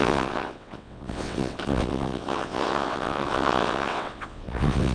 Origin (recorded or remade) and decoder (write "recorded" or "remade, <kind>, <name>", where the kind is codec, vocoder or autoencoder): remade, vocoder, WaveNeXt